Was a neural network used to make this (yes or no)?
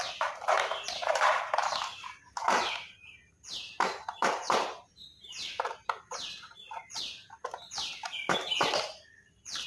yes